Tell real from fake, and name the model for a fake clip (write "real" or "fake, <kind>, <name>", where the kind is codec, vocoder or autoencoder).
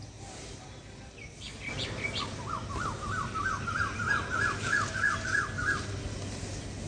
real